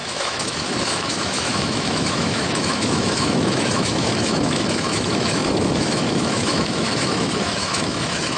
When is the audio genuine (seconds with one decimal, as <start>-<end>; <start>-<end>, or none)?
none